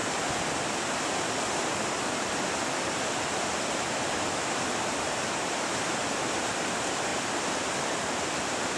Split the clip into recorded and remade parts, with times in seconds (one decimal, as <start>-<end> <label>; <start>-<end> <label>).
0.0-8.8 remade